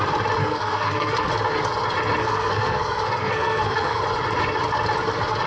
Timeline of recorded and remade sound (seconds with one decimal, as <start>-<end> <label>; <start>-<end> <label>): 0.0-0.4 recorded; 0.4-1.3 remade; 1.3-2.2 recorded; 2.2-4.0 remade; 4.0-5.5 recorded